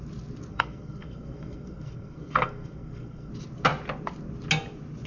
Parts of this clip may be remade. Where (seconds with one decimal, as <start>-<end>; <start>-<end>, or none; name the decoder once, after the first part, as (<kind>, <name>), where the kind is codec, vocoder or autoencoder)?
0.5-3.3 (codec, SNAC)